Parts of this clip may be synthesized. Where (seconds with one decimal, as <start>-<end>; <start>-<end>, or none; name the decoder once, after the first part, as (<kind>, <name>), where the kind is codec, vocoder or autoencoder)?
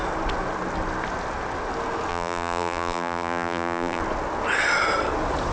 2.1-4.0 (vocoder, BigVGAN v2)